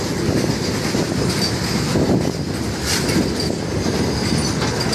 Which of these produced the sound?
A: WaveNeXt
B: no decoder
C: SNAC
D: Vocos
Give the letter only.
B